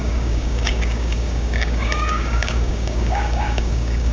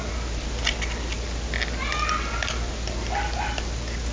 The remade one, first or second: first